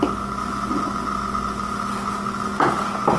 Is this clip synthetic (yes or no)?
no